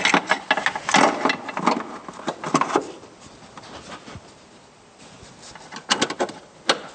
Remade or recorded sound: recorded